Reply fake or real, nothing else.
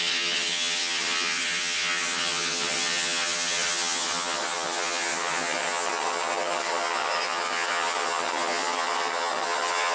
fake